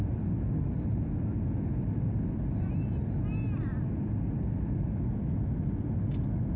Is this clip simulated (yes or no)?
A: no